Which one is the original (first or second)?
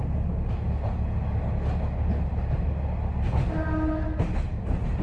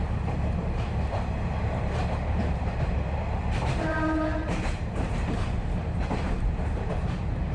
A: first